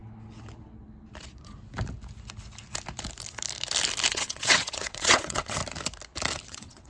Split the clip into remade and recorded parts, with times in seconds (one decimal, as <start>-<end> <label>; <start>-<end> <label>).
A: 0.0-4.1 recorded; 4.1-5.6 remade; 5.6-6.5 recorded; 6.5-6.9 remade